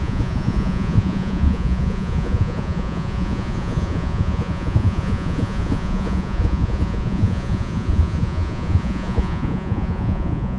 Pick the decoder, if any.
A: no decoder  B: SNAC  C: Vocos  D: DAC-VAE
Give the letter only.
C